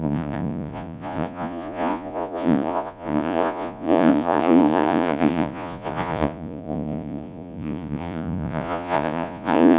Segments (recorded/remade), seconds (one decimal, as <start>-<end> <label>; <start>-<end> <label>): 0.0-9.8 remade